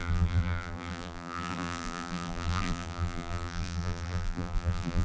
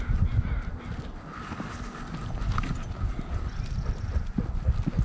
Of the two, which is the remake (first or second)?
first